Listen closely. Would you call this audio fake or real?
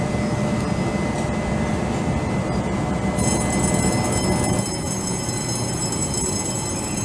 real